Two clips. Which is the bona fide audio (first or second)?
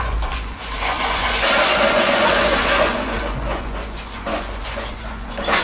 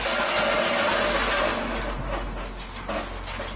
second